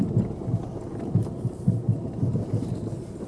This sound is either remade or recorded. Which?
recorded